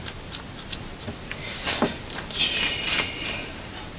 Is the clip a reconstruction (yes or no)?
no